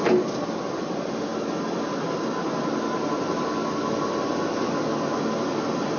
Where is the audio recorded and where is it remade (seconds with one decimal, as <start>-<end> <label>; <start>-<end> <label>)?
0.0-6.0 recorded

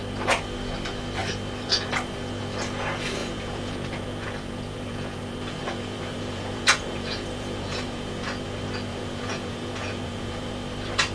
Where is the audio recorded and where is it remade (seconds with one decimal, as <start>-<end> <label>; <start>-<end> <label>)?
0.0-3.2 recorded; 3.2-8.4 remade; 8.4-8.9 recorded; 8.9-10.5 remade; 10.5-11.1 recorded

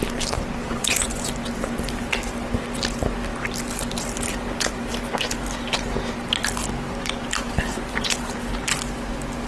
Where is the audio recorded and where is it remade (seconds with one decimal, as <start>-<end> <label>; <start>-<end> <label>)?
0.0-0.6 recorded; 0.6-1.2 remade; 1.2-7.7 recorded; 7.7-8.3 remade; 8.3-9.5 recorded

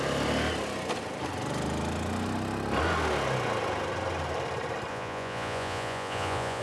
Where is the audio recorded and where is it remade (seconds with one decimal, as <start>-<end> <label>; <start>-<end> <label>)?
0.0-4.9 recorded; 4.9-6.6 remade

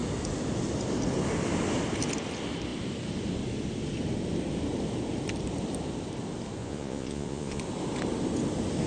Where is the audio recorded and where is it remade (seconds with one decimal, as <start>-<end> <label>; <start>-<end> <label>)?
0.0-6.6 recorded; 6.6-7.6 remade; 7.6-8.9 recorded